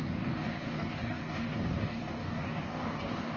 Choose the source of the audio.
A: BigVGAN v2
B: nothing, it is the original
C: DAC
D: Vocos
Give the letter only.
C